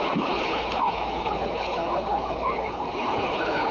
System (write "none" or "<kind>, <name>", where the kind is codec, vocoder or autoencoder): codec, HILCodec